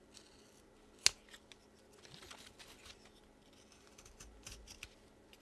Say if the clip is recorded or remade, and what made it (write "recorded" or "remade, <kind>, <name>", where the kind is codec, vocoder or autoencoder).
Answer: recorded